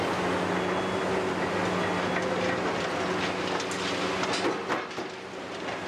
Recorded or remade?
recorded